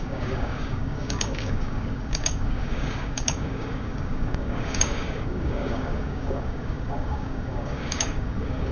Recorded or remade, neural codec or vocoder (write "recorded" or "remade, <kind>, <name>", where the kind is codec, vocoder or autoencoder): remade, codec, DAC